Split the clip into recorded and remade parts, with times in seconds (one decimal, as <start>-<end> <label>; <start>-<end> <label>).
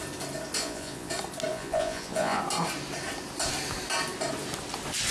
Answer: 0.0-0.6 recorded; 0.6-1.1 remade; 1.1-1.5 recorded; 1.5-2.4 remade; 2.4-5.1 recorded